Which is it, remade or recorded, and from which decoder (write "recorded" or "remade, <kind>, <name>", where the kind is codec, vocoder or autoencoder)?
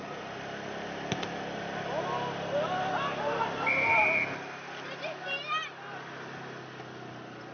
recorded